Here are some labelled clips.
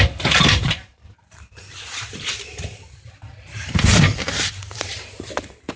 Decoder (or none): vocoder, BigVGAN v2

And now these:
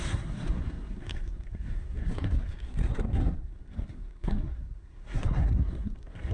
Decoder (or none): codec, SNAC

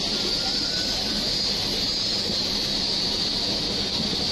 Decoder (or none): none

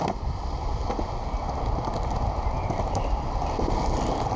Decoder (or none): none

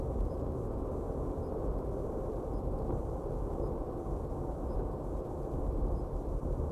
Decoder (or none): vocoder, BigVGAN v2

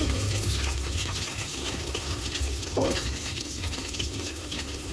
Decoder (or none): codec, SNAC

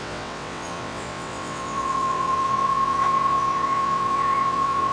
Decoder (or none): vocoder, WaveNeXt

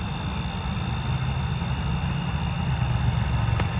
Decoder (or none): none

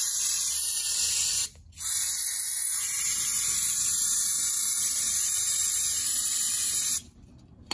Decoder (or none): none